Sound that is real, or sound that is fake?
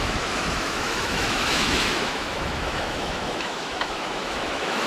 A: fake